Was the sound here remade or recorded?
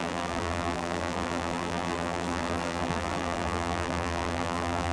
remade